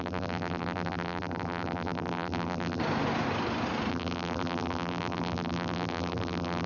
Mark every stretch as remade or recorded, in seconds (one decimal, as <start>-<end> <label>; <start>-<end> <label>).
0.0-2.8 remade; 2.8-3.9 recorded; 3.9-6.7 remade